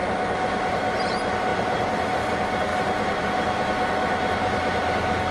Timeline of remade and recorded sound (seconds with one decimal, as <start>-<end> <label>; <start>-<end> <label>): 0.0-1.0 remade; 1.0-1.5 recorded; 1.5-2.2 remade; 2.2-2.7 recorded; 2.7-3.2 remade; 3.2-5.3 recorded